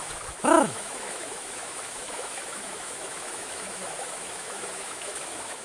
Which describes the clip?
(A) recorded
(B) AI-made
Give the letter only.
B